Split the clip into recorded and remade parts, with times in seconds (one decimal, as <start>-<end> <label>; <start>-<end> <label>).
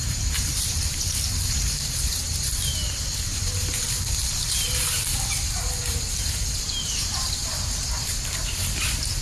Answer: 0.0-9.2 remade